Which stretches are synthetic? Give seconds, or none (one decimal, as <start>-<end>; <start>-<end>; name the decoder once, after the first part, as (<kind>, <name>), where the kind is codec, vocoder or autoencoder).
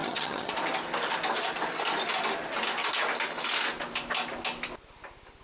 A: 0.0-0.5 (vocoder, HiFi-GAN)